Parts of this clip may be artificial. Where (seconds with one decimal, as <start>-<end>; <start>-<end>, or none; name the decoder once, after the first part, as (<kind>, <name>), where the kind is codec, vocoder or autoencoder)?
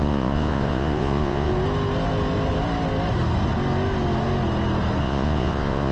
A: 0.0-1.5 (vocoder, Vocos); 5.0-5.9